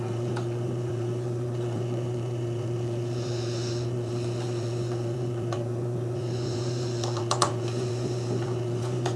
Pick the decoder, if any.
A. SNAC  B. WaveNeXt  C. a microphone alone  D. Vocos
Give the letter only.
D